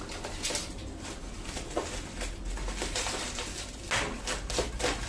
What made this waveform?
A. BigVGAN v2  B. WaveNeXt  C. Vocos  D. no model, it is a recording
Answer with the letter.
D